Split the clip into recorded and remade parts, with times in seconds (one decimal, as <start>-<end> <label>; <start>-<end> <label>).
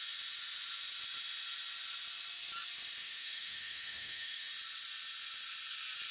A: 0.0-3.0 recorded; 3.0-4.5 remade; 4.5-6.1 recorded